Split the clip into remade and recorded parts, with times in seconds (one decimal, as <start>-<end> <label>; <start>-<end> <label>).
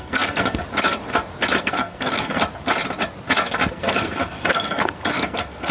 0.0-0.6 remade; 0.6-1.6 recorded; 1.6-2.4 remade; 2.4-3.7 recorded; 3.7-5.7 remade